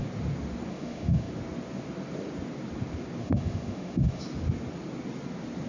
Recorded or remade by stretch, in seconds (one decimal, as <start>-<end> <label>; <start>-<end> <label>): 0.0-0.7 recorded; 0.7-1.3 remade; 1.3-3.2 recorded; 3.2-4.2 remade; 4.2-5.7 recorded

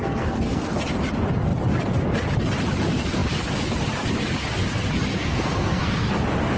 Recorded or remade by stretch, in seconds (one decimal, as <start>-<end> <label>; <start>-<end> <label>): 0.0-0.8 remade; 0.8-5.2 recorded; 5.2-6.1 remade; 6.1-6.6 recorded